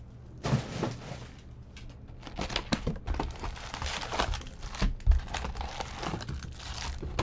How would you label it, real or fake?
real